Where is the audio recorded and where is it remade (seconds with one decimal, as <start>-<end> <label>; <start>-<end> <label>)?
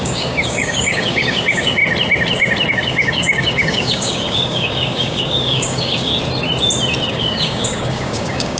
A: 0.0-1.8 remade; 1.8-2.7 recorded; 2.7-6.1 remade; 6.1-7.1 recorded; 7.1-8.6 remade